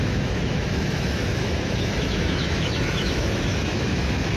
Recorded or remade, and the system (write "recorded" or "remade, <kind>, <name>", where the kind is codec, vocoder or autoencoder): remade, autoencoder, DAC-VAE